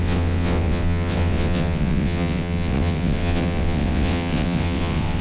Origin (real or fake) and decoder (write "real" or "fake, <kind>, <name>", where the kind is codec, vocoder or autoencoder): fake, vocoder, WaveNeXt